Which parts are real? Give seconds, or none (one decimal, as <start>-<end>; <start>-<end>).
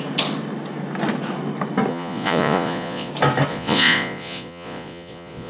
0.0-1.9; 3.1-3.5